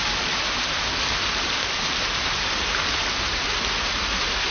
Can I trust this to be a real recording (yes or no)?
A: yes